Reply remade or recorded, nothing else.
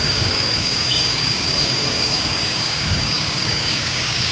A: remade